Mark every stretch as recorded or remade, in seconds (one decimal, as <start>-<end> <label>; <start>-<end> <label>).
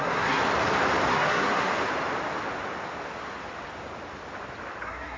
0.0-0.4 remade; 0.4-1.1 recorded; 1.1-1.7 remade; 1.7-4.8 recorded; 4.8-5.2 remade